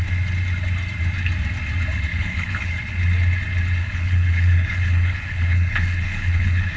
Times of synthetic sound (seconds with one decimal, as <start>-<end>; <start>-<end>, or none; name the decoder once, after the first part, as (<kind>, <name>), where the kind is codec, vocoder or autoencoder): 2.1-2.8 (codec, HILCodec); 3.8-6.8